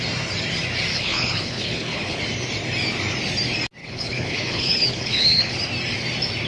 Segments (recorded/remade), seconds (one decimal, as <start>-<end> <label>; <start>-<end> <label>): 0.0-0.9 recorded; 0.9-2.2 remade; 2.2-3.8 recorded; 3.8-5.6 remade; 5.6-6.5 recorded